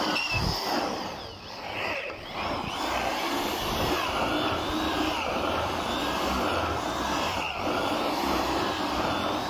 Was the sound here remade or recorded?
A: recorded